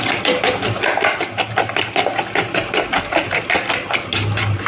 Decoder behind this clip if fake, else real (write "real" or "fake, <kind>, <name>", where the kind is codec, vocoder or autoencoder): real